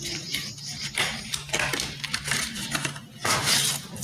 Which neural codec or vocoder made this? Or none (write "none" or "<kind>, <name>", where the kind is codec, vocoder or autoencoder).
none